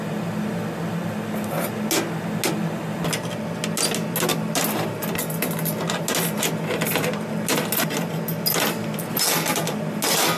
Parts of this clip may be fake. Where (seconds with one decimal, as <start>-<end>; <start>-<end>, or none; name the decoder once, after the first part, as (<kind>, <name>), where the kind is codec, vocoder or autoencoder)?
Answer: none